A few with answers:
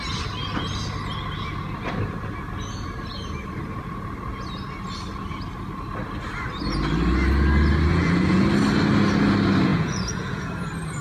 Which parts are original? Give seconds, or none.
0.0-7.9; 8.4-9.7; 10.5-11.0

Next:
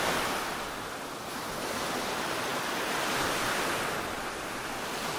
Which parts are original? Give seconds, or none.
0.0-5.2

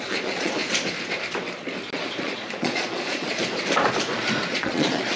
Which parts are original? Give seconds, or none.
0.6-2.2; 3.4-4.5